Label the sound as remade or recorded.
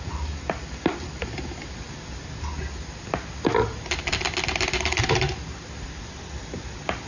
recorded